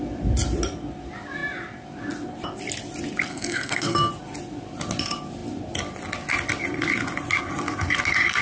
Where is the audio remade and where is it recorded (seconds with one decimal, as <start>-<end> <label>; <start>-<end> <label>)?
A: 0.0-3.3 recorded; 3.3-4.1 remade; 4.1-8.4 recorded